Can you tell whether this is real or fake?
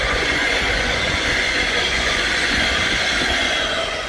fake